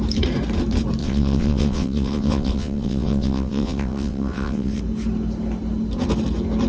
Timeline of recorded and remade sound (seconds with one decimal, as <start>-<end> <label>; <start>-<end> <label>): 0.0-1.0 recorded; 1.0-4.8 remade; 4.8-6.7 recorded